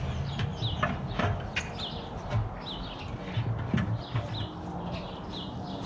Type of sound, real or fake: real